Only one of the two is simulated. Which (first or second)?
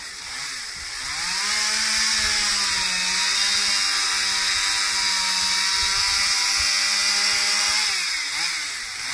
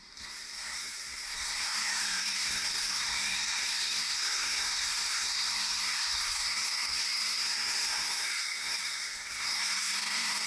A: second